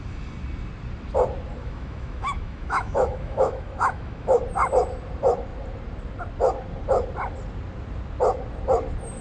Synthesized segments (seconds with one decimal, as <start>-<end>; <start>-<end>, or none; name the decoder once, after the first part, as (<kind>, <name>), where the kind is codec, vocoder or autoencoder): 1.6-4.4 (autoencoder, DAC-VAE)